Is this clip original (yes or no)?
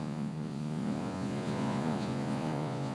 no